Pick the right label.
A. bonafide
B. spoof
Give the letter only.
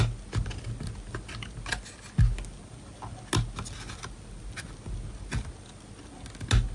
A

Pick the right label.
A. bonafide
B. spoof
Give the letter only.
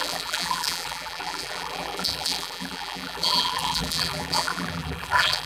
B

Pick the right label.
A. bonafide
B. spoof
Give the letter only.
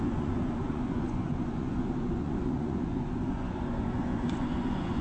B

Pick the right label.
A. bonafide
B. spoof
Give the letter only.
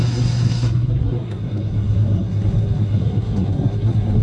B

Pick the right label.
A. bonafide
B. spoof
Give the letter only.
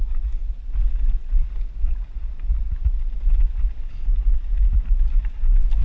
A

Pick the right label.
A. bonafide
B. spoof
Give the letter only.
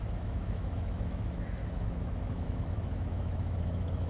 B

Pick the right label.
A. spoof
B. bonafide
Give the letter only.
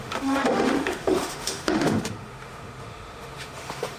A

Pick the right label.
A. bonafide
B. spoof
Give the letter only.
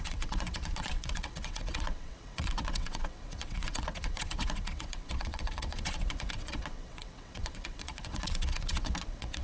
B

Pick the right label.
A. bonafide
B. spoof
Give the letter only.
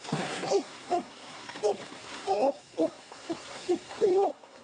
B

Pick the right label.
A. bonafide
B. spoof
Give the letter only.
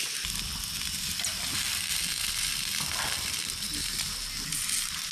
A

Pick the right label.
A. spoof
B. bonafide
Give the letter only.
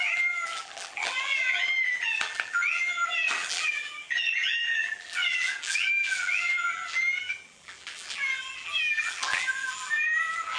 A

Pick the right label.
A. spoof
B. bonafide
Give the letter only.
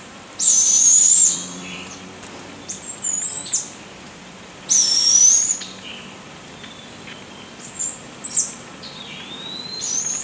A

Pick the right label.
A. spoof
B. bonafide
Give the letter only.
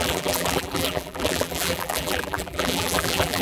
A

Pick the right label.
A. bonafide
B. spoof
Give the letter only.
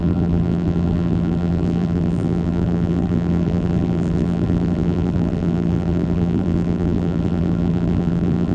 B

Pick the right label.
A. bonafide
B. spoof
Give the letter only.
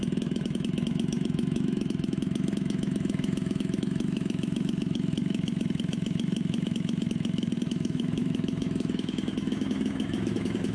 B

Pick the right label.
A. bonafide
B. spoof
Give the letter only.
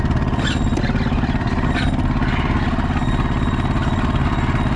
A